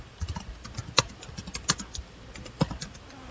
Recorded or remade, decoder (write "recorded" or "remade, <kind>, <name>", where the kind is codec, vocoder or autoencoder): recorded